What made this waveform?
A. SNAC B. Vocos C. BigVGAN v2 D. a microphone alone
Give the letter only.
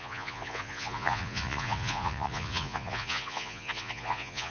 B